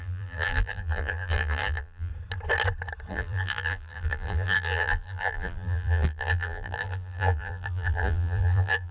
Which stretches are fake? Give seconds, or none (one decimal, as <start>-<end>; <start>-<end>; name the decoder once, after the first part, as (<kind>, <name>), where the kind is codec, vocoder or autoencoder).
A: 0.0-2.1 (vocoder, BigVGAN v2); 3.1-8.9